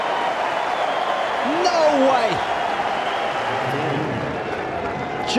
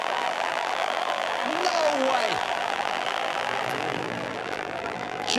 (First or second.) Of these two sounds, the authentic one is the first